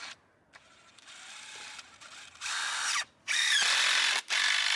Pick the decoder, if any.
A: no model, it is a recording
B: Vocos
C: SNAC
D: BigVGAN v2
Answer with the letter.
A